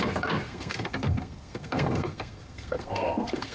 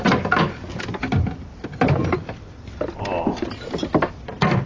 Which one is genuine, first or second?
second